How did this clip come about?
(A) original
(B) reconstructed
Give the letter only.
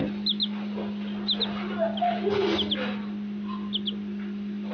A